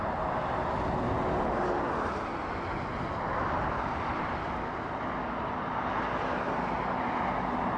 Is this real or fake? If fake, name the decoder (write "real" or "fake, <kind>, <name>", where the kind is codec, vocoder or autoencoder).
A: real